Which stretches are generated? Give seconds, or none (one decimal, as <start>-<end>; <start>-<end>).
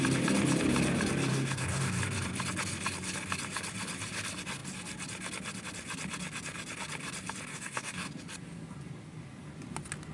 1.3-2.0; 7.5-8.1